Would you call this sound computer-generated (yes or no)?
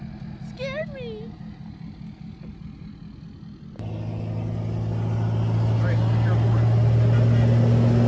no